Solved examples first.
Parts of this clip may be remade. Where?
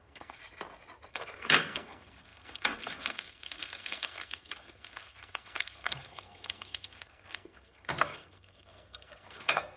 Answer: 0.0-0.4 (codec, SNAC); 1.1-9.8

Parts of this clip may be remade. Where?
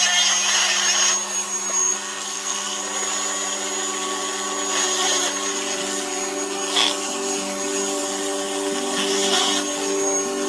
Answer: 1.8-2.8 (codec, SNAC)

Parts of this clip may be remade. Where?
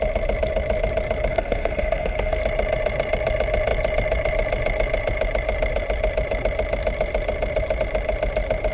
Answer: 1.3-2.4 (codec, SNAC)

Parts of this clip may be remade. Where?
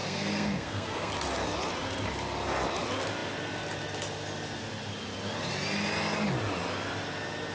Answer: 0.0-1.1 (codec, SNAC)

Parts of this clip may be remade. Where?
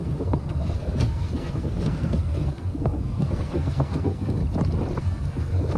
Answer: 0.0-4.4 (codec, SNAC); 5.0-5.8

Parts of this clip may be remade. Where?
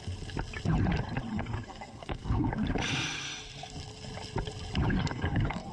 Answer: 1.3-2.5 (codec, SNAC); 5.0-5.7